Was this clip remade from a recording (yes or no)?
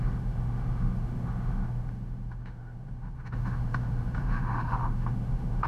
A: yes